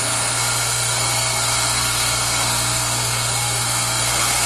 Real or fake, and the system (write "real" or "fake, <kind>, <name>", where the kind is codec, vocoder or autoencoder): fake, codec, SNAC